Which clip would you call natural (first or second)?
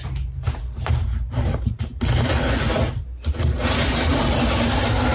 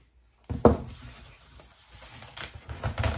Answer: second